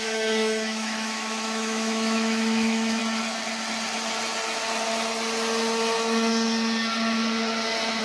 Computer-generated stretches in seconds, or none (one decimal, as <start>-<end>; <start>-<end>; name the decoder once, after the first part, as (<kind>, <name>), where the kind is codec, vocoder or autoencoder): 0.0-3.0 (autoencoder, DAC-VAE)